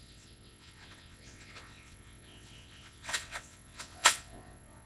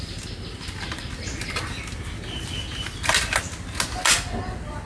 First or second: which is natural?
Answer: second